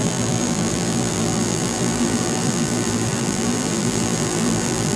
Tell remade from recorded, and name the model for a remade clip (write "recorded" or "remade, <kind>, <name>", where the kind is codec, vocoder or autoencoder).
remade, vocoder, BigVGAN v2